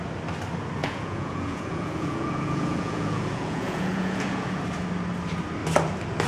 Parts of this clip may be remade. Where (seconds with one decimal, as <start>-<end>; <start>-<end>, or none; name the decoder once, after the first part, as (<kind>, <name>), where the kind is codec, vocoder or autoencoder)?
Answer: 0.8-4.6 (vocoder, Vocos)